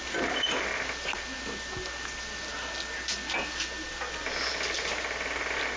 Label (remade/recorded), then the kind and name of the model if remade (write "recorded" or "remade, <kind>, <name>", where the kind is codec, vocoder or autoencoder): recorded